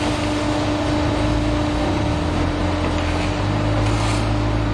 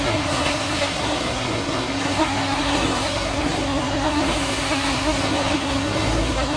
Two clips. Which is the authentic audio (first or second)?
first